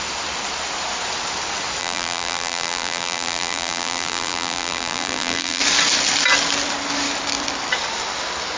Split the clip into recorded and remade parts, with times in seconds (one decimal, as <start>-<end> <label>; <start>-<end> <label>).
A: 0.0-1.8 recorded; 1.8-5.6 remade; 5.6-8.6 recorded